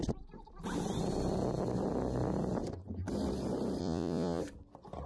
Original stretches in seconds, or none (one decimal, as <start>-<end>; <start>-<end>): 0.0-3.8; 4.4-5.1